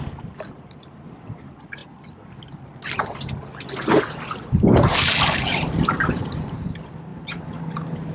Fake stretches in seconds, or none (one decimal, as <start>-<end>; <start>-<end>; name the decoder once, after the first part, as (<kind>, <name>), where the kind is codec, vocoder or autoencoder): 7.1-8.1 (vocoder, BigVGAN v2)